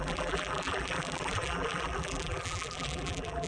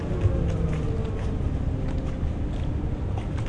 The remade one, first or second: first